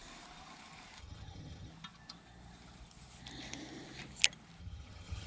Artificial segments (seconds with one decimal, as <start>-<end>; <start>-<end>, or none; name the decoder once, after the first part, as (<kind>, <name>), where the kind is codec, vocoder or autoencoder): 1.0-1.7 (vocoder, HiFi-GAN); 4.6-5.3